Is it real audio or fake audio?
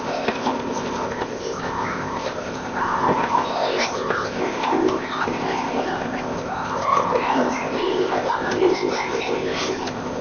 fake